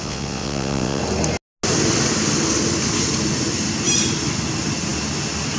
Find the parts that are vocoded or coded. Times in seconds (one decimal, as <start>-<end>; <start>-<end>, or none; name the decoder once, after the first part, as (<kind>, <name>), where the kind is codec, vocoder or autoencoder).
0.0-1.0 (vocoder, WaveNeXt)